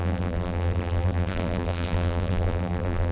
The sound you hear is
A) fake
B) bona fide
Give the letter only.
A